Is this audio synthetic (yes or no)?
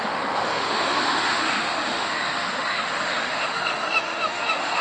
yes